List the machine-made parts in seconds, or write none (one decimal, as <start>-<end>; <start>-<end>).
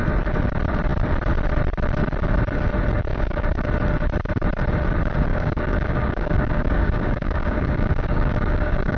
3.1-3.7; 5.3-9.0